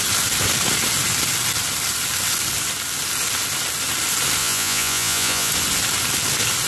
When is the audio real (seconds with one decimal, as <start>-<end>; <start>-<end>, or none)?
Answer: 0.0-4.4; 5.5-6.7